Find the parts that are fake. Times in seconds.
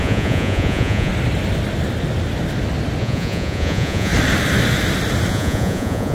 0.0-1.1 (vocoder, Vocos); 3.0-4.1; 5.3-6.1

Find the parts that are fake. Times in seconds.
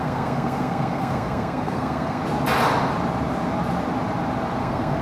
0.0-2.2 (codec, SNAC); 4.6-5.0